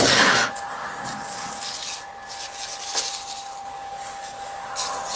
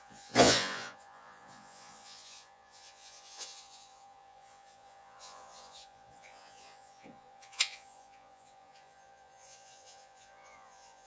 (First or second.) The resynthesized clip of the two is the second